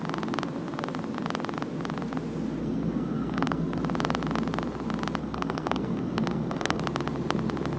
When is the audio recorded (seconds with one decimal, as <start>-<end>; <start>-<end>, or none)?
0.0-2.6; 3.8-5.2; 6.8-7.8